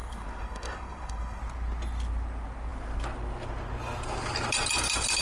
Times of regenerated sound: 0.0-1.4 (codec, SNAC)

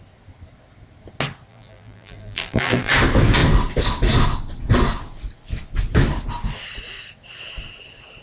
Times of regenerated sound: 1.5-2.9 (vocoder, BigVGAN v2)

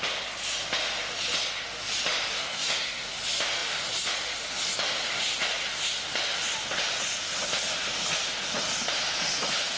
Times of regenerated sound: 2.3-3.2 (codec, SNAC)

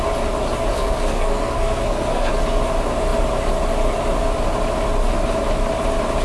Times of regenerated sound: 0.7-2.3 (codec, SNAC)